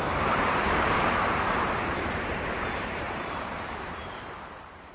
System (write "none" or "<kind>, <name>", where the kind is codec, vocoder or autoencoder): vocoder, BigVGAN v2